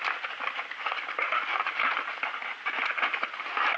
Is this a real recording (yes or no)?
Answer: yes